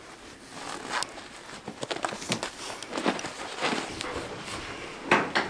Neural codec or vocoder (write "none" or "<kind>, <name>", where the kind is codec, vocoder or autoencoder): none